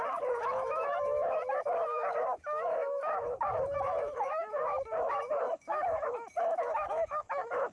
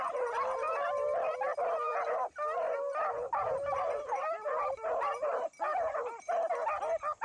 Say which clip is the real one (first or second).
second